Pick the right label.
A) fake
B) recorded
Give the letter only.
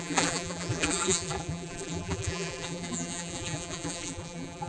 A